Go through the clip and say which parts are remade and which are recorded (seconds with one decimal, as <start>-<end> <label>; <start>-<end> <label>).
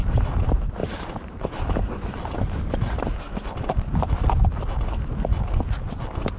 0.0-0.8 recorded; 0.8-4.1 remade; 4.1-6.4 recorded